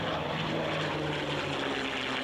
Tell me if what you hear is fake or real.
real